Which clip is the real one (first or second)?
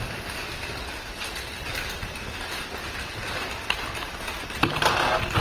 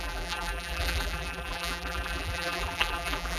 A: first